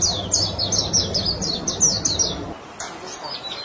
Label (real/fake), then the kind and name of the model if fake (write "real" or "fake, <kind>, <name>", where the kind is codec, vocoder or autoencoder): real